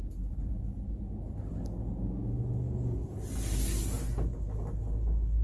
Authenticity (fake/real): real